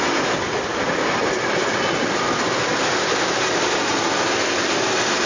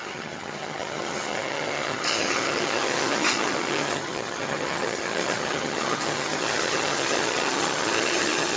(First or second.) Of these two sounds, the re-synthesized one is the second